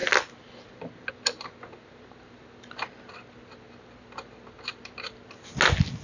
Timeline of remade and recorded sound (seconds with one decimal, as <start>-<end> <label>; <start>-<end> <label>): 0.0-6.0 recorded

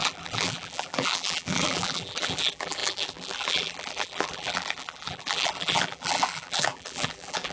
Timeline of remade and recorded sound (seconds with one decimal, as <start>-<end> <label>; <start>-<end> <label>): 0.0-7.5 remade

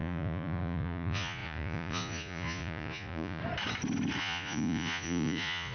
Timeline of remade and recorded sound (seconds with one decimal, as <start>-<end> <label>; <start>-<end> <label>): 0.0-3.4 remade; 3.4-4.2 recorded; 4.2-5.7 remade

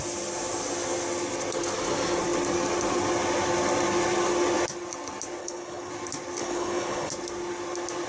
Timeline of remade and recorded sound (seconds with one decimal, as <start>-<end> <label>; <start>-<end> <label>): 0.0-5.4 recorded; 5.4-5.9 remade; 5.9-6.4 recorded; 6.4-7.1 remade; 7.1-8.1 recorded

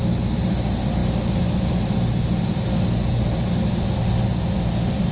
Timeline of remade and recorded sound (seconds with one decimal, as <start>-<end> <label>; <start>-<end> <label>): 0.0-5.1 recorded